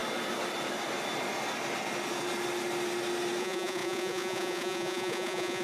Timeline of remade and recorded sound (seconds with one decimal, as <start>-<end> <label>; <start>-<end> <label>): 0.0-3.4 recorded; 3.4-5.6 remade